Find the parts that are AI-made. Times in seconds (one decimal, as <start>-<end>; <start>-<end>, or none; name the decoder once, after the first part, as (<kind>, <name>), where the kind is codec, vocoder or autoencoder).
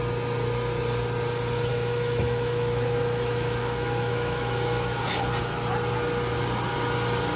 1.7-5.0 (autoencoder, DAC-VAE)